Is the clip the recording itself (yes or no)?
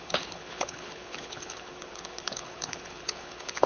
no